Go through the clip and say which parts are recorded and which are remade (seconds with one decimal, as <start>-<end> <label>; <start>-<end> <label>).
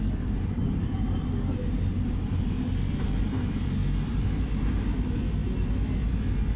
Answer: 0.0-6.6 recorded